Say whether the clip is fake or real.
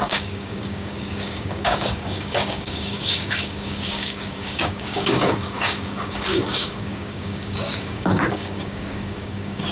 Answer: fake